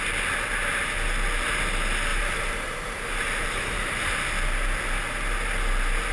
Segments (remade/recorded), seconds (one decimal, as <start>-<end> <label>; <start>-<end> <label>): 0.0-2.1 recorded; 2.1-4.1 remade; 4.1-6.1 recorded